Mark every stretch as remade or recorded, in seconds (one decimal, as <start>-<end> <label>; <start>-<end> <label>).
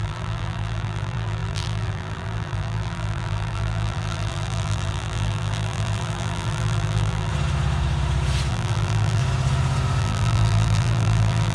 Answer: 0.0-7.3 remade; 7.3-8.5 recorded; 8.5-9.2 remade; 9.2-10.0 recorded; 10.0-11.5 remade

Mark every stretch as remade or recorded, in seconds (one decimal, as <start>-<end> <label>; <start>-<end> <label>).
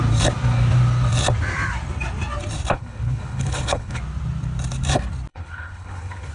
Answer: 0.0-2.7 recorded; 2.7-4.0 remade; 4.0-5.3 recorded; 5.3-6.3 remade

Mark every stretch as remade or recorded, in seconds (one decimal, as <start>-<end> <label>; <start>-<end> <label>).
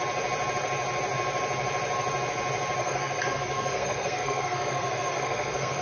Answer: 0.0-2.8 recorded; 2.8-5.8 remade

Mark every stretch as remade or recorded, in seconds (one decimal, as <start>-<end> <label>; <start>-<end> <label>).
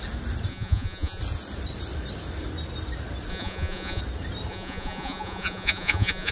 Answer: 0.0-0.5 recorded; 0.5-1.2 remade; 1.2-3.3 recorded; 3.3-4.0 remade; 4.0-4.5 recorded; 4.5-6.3 remade